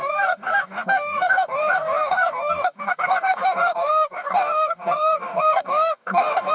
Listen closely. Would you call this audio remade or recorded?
remade